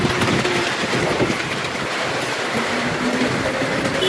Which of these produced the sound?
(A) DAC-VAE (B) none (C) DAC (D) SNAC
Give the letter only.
B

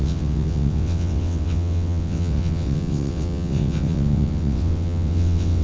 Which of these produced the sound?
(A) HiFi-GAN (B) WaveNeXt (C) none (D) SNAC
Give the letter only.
B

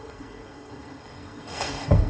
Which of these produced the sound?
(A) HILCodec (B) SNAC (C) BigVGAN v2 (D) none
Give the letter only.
B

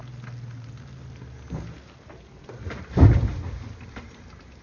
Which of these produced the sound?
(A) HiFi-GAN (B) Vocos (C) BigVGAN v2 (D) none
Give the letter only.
D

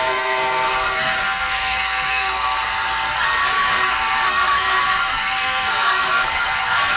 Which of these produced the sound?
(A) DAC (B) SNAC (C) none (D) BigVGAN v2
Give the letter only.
B